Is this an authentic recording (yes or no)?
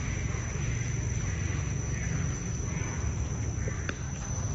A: yes